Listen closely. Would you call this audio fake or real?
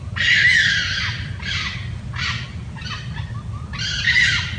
real